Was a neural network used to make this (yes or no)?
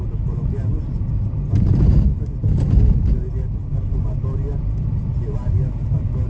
no